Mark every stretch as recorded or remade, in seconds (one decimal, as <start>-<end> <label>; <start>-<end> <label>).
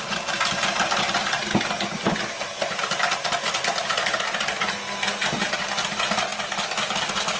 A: 0.0-7.4 recorded